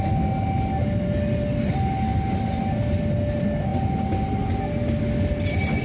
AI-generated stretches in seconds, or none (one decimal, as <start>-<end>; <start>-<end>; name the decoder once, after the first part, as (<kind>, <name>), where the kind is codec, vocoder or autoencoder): none